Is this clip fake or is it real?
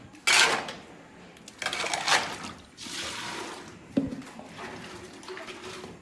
real